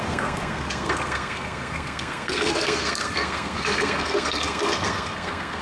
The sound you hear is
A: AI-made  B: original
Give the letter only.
A